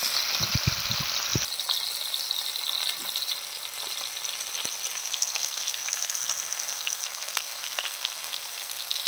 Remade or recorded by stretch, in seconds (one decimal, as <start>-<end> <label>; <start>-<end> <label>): 0.0-5.0 recorded; 5.0-9.1 remade